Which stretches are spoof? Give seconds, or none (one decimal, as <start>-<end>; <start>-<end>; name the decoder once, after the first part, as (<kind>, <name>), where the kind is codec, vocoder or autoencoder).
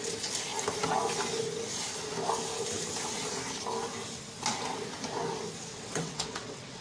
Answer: 5.7-6.8 (vocoder, WaveNeXt)